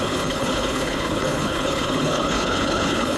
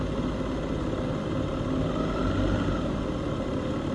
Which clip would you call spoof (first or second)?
first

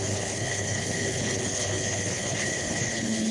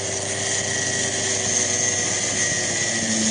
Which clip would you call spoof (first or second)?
first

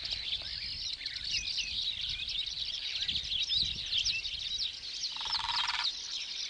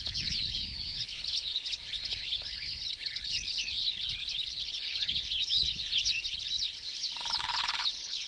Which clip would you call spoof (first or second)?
second